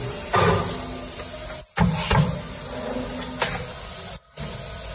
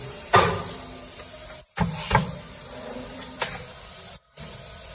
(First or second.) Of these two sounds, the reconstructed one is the second